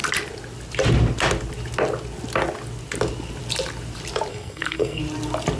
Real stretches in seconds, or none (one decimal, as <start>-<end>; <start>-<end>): 0.0-4.3; 5.0-5.6